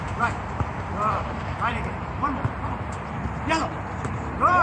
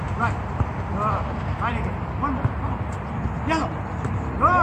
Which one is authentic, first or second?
second